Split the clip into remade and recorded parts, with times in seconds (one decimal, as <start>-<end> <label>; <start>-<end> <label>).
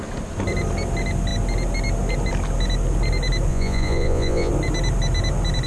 0.0-3.5 recorded; 3.5-4.5 remade; 4.5-5.7 recorded